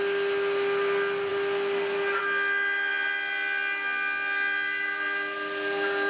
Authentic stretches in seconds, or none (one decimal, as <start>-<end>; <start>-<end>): 0.0-6.1